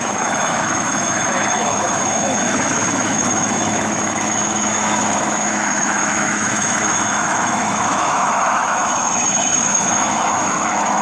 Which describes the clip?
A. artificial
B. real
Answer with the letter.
A